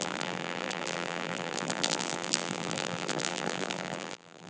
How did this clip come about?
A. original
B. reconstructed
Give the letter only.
B